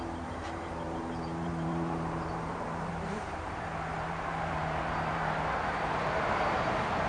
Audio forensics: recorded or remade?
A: remade